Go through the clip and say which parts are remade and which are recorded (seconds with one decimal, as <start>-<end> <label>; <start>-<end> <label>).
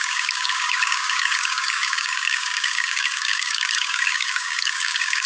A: 0.0-5.3 remade